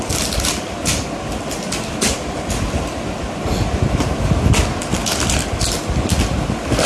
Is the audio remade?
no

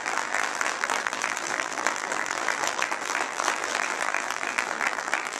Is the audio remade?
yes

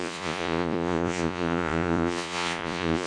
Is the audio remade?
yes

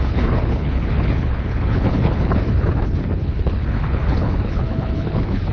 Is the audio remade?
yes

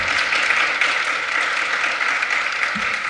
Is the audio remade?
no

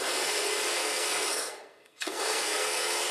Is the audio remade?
yes